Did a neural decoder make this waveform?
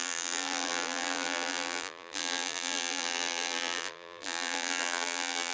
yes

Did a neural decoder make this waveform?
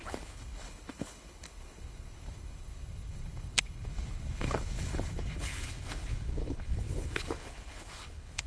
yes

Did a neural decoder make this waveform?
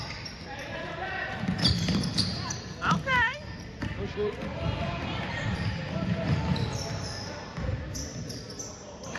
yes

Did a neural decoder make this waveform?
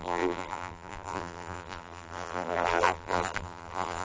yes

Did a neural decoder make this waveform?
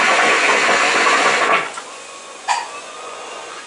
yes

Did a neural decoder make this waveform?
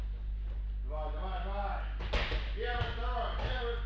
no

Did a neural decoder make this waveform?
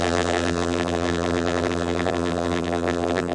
yes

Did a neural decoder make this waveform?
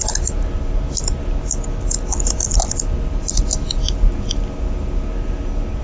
no